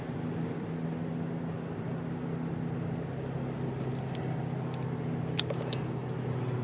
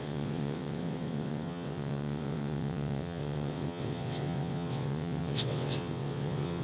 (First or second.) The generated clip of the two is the second